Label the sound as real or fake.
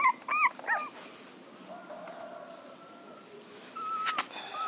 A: real